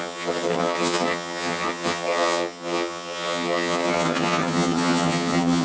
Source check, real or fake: fake